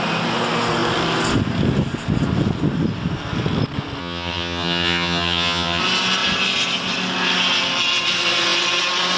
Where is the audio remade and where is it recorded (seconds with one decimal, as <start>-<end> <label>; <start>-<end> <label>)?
0.0-4.0 recorded; 4.0-5.8 remade; 5.8-9.2 recorded